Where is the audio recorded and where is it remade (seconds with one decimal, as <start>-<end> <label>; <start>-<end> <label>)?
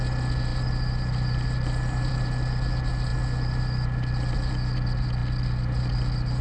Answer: 0.0-6.4 recorded